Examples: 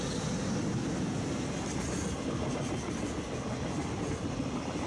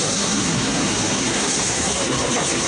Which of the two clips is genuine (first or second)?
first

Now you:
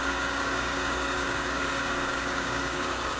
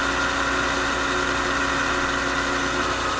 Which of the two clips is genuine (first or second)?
second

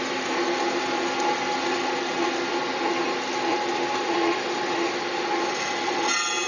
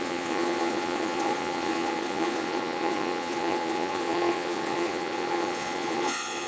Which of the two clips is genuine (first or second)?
first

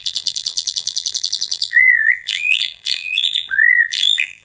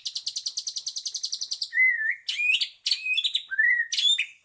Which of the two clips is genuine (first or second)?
second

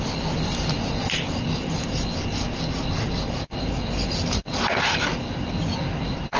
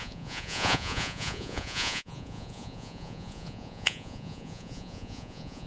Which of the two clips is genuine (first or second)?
first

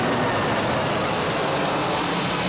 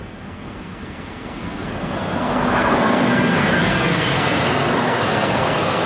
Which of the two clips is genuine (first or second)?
first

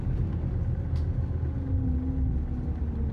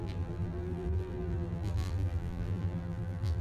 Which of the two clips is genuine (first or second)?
first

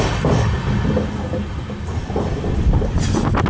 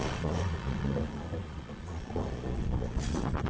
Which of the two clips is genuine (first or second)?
first